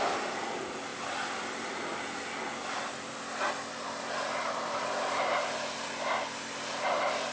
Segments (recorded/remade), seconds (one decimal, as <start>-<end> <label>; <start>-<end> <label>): 0.0-7.3 recorded